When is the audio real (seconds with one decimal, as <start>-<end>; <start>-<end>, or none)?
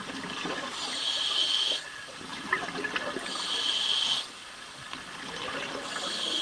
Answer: 0.0-6.4